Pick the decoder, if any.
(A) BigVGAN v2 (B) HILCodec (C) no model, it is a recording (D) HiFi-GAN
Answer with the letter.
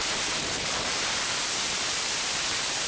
A